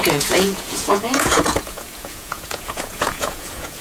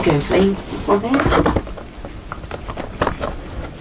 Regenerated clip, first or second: first